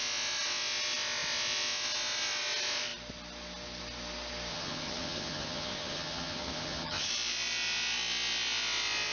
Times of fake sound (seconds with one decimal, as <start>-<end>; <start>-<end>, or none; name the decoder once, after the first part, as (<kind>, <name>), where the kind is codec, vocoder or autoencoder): 4.5-7.1 (vocoder, HiFi-GAN)